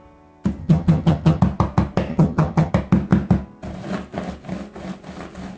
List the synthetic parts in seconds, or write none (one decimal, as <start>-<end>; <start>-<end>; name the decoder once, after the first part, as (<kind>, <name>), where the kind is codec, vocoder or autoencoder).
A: 0.6-1.4 (vocoder, HiFi-GAN); 2.1-2.7